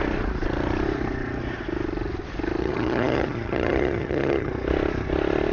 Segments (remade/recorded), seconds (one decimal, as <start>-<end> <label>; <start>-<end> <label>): 0.0-2.6 recorded; 2.6-4.5 remade; 4.5-5.5 recorded